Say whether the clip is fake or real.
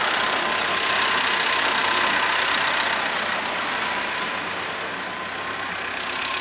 real